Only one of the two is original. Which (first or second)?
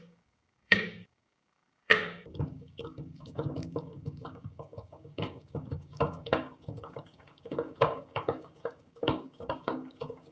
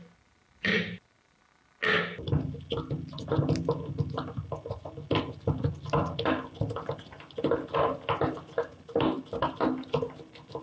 second